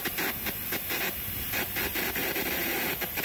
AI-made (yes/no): no